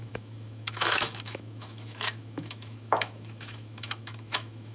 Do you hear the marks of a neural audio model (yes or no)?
yes